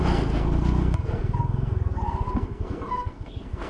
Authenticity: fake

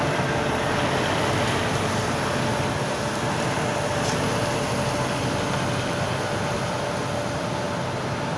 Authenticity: real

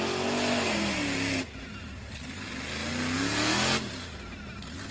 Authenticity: real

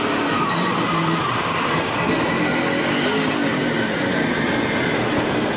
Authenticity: real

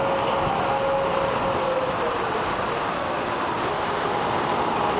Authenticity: real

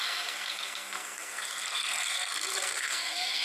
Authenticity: fake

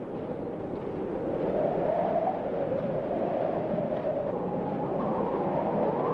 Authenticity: real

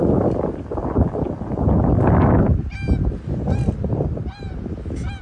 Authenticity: real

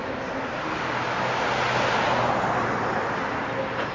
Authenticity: real